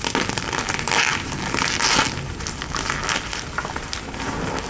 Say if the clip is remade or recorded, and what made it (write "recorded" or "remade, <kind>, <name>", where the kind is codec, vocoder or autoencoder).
recorded